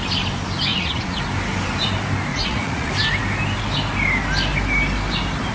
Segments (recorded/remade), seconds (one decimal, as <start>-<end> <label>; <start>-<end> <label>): 0.0-0.7 recorded; 0.7-1.2 remade; 1.2-2.3 recorded; 2.3-2.9 remade; 2.9-5.5 recorded